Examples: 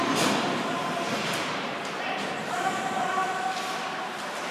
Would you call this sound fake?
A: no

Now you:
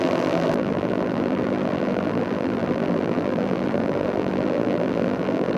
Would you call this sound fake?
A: yes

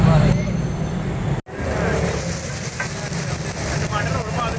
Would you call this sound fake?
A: no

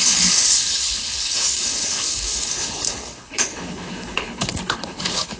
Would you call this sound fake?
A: yes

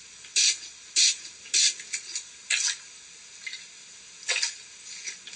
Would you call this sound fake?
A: no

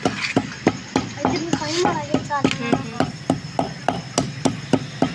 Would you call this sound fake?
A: no